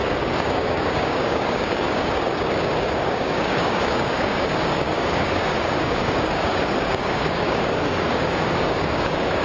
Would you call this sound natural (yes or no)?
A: no